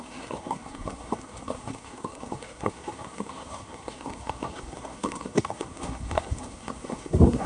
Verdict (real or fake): fake